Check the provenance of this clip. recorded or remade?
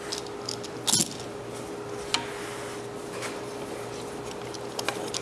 recorded